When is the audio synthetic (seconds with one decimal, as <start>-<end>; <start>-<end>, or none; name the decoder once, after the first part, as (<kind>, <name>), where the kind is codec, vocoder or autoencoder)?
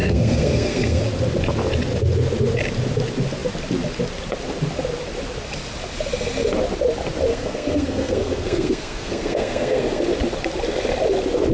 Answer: 0.0-1.0 (codec, SNAC); 7.3-10.0